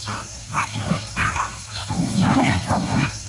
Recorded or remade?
remade